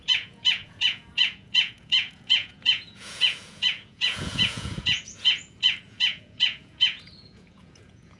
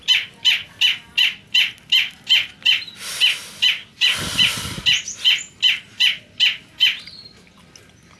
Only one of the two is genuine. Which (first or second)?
second